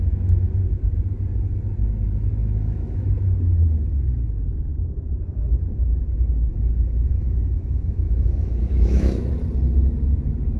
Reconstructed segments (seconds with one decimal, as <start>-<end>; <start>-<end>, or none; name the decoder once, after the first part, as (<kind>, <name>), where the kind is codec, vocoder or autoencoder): 2.4-3.1 (autoencoder, DAC-VAE); 6.5-9.3